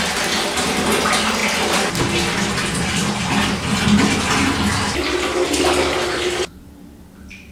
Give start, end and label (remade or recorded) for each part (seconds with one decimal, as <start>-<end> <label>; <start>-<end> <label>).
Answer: 0.0-7.5 recorded